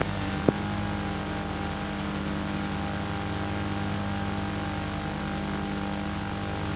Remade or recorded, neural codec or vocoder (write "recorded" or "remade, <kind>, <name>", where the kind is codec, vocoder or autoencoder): recorded